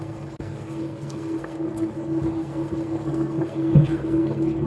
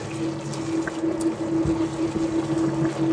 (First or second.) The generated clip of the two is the first